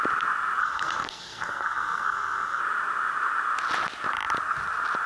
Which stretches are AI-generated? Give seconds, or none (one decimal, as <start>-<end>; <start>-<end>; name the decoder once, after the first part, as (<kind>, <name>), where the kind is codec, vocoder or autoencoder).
0.6-2.6 (codec, SNAC)